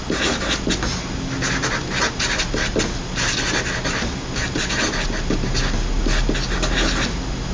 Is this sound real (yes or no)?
yes